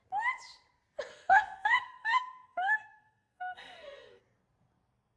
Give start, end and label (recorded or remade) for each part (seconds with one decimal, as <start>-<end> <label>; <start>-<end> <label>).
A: 0.0-1.1 recorded; 1.1-4.2 remade; 4.2-5.2 recorded